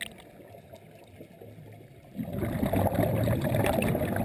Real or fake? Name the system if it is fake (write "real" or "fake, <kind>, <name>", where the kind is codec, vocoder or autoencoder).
real